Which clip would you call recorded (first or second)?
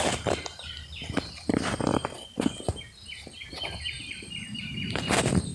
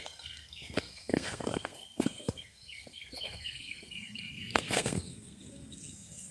first